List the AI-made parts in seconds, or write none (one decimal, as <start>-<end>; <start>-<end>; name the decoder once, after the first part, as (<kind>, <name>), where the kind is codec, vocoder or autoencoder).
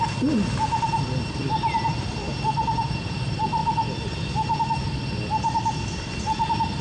none